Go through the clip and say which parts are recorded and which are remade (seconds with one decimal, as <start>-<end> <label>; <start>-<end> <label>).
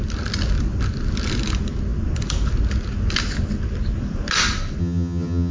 0.0-4.8 recorded; 4.8-5.5 remade